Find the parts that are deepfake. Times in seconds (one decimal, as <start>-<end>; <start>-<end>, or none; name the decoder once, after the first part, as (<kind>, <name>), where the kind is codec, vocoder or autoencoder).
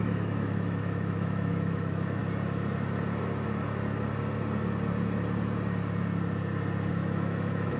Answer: 0.0-2.2 (autoencoder, DAC-VAE); 6.9-7.8